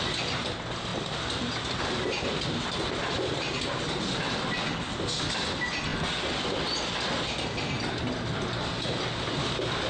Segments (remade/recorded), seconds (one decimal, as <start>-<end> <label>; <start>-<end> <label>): 0.0-9.9 recorded